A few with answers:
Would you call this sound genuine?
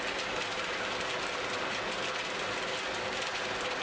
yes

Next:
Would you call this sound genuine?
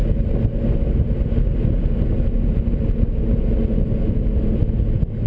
yes